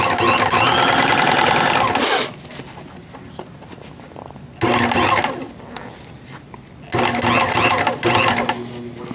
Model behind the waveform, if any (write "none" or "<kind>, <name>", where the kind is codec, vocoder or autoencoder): none